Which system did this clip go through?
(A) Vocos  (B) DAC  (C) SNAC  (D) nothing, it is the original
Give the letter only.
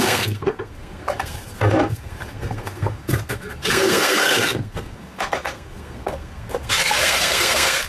C